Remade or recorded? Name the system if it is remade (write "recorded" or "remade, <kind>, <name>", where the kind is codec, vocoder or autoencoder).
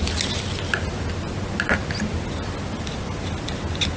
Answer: recorded